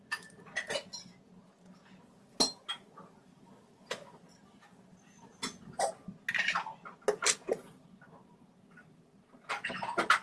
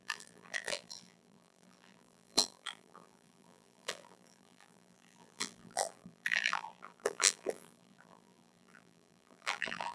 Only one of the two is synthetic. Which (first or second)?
second